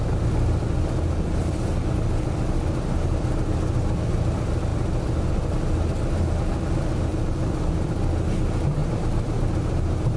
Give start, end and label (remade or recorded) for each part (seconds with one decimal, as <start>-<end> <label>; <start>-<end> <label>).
0.0-7.1 recorded; 7.1-7.7 remade; 7.7-10.2 recorded

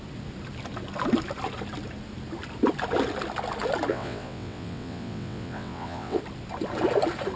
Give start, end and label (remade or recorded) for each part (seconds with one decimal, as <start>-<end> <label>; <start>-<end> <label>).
0.0-3.9 recorded; 3.9-6.2 remade; 6.2-7.4 recorded

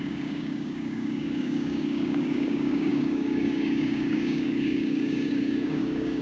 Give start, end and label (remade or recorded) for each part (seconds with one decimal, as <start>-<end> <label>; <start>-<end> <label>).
0.0-6.2 remade

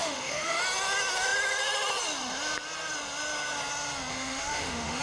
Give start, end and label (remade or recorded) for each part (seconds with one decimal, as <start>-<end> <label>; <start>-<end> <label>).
0.0-0.6 remade; 0.6-4.1 recorded; 4.1-5.0 remade